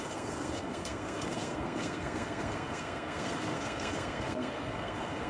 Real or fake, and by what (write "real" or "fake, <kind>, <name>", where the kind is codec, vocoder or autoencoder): fake, codec, SNAC